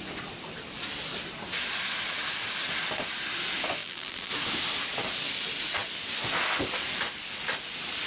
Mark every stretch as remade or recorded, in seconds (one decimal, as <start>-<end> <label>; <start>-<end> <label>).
0.0-3.8 recorded; 3.8-4.3 remade; 4.3-8.1 recorded

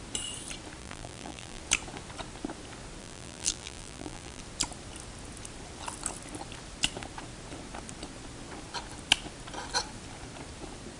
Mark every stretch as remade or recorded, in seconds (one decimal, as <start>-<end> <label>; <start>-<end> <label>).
0.0-0.8 recorded; 0.8-1.6 remade; 1.6-3.0 recorded; 3.0-4.4 remade; 4.4-11.0 recorded

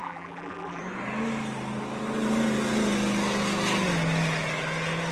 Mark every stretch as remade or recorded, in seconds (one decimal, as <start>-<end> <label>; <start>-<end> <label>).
0.0-0.8 remade; 0.8-5.1 recorded

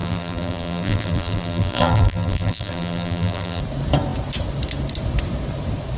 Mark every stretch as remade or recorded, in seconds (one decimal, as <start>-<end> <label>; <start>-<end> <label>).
0.0-3.6 remade; 3.6-6.0 recorded

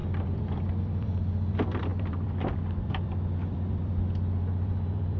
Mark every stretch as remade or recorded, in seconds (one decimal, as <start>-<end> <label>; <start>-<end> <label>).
0.0-5.2 remade

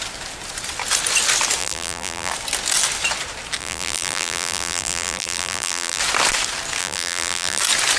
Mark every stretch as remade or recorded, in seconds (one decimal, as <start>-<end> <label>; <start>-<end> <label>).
0.0-1.6 recorded; 1.6-2.3 remade; 2.3-3.6 recorded; 3.6-6.0 remade; 6.0-6.8 recorded; 6.8-7.6 remade; 7.6-8.0 recorded

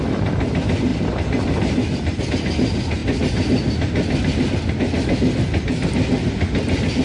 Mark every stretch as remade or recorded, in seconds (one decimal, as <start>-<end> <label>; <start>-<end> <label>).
0.0-7.0 recorded